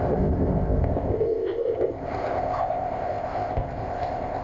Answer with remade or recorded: remade